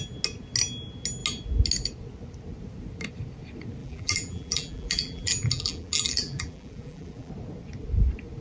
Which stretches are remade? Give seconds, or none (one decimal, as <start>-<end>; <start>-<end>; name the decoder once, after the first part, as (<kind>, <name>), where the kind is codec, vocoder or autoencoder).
3.8-7.3 (vocoder, BigVGAN v2)

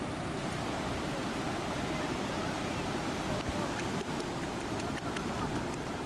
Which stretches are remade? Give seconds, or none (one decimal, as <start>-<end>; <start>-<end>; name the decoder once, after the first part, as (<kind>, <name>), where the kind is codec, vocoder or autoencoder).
none

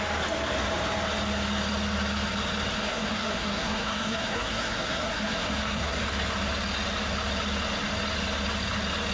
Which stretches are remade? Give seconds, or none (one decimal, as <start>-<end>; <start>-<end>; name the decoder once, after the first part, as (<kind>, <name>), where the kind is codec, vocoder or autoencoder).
2.8-6.0 (codec, SNAC)

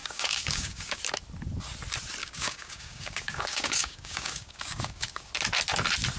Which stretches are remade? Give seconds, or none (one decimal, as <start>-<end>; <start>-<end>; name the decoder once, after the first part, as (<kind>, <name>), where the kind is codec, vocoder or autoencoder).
0.0-1.0 (codec, DAC); 2.2-5.3

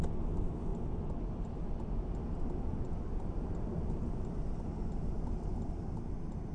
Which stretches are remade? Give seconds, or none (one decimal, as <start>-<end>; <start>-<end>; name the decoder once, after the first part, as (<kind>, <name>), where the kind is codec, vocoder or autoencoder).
none